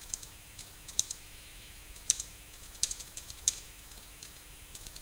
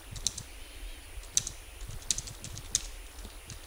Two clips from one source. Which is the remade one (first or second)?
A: first